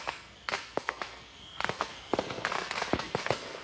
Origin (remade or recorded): remade